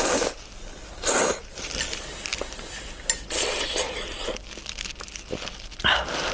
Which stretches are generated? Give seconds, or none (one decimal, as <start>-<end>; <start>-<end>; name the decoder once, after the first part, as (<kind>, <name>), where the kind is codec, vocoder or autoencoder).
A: none